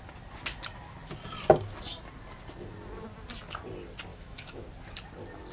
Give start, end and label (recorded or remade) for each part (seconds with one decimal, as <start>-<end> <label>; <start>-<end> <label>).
0.0-4.1 recorded; 4.1-4.6 remade; 4.6-5.5 recorded